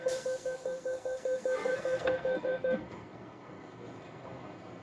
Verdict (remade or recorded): remade